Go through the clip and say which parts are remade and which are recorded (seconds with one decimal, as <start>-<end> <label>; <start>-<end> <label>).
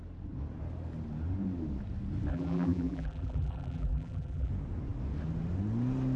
0.0-2.3 recorded; 2.3-4.5 remade; 4.5-6.2 recorded